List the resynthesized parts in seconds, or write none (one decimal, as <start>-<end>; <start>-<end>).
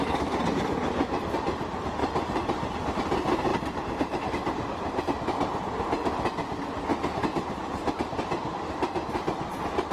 3.5-5.0; 6.9-7.9